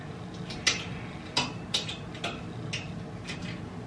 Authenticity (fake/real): real